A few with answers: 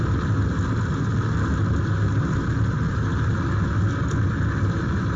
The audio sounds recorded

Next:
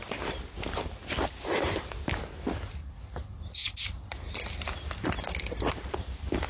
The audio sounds recorded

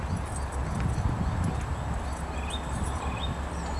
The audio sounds recorded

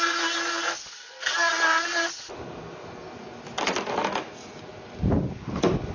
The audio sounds recorded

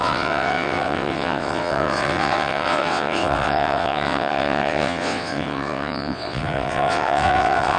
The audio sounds remade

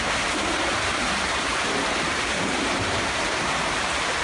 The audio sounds remade